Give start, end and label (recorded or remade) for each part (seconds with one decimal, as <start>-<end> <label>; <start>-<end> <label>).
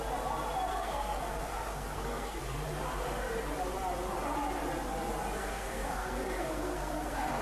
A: 0.0-0.7 recorded; 0.7-2.4 remade; 2.4-5.4 recorded; 5.4-7.4 remade